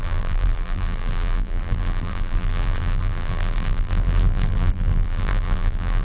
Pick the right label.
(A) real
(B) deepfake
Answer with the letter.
B